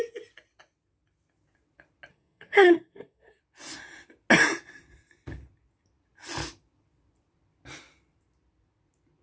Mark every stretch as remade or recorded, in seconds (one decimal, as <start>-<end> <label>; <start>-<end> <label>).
0.0-2.1 recorded; 2.1-3.4 remade; 3.4-9.2 recorded